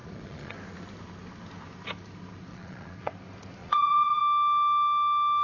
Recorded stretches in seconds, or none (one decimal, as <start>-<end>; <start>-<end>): 0.5-2.5; 3.1-3.6; 4.2-5.4